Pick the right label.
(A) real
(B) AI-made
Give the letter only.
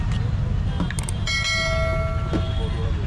A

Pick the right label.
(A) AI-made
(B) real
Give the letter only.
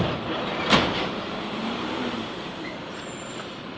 A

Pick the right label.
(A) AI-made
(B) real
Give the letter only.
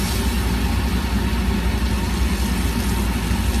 B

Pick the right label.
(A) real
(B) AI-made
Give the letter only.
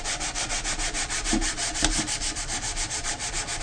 B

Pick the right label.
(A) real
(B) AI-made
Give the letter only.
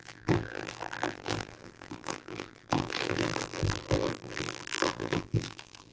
B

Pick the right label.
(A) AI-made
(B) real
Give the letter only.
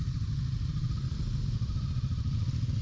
B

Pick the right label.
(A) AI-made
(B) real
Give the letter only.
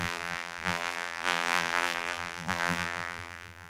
A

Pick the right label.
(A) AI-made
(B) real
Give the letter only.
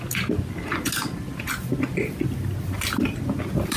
B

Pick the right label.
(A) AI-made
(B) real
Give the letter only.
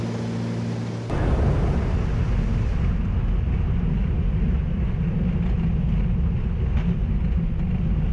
B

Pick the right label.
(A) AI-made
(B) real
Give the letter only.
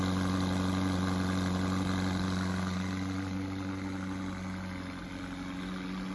B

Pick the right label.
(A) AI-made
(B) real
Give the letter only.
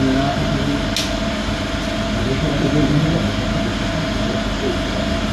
B